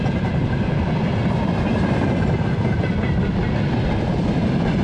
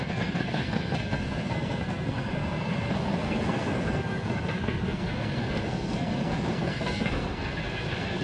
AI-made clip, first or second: second